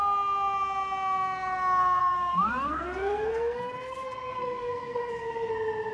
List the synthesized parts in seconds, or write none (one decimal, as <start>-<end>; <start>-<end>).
2.0-5.5